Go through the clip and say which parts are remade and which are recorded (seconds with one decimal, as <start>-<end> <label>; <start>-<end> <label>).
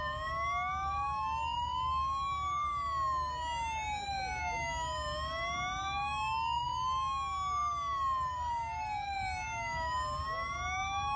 0.0-11.2 recorded